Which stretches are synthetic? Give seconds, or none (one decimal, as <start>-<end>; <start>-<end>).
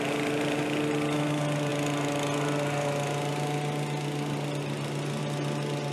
none